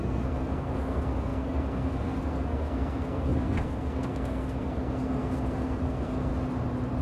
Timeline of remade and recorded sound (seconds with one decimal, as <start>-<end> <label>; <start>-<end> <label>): 0.0-6.3 remade; 6.3-7.0 recorded